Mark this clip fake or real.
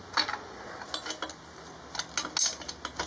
real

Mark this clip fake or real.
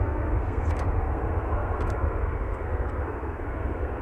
fake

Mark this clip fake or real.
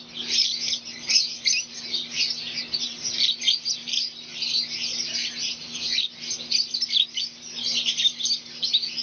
real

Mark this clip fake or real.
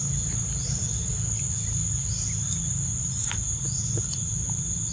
real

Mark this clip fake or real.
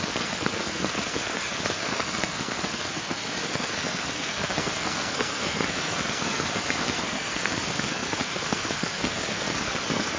fake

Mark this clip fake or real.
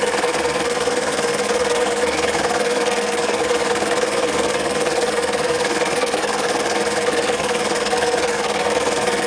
fake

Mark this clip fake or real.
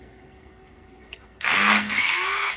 fake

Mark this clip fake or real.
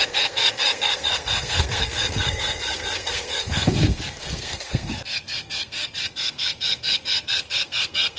fake